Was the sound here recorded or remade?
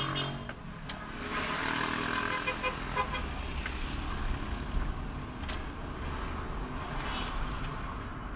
recorded